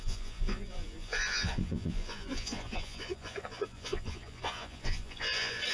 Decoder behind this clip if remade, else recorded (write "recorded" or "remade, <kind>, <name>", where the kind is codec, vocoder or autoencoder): remade, vocoder, Vocos